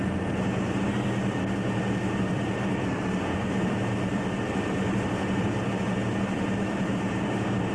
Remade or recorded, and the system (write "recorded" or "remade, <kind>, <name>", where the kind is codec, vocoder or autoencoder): remade, vocoder, BigVGAN v2